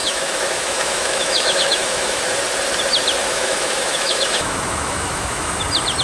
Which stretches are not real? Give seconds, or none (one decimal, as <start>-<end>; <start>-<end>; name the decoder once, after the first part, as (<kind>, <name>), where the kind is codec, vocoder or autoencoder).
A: 0.0-2.2 (autoencoder, DAC-VAE); 3.2-5.6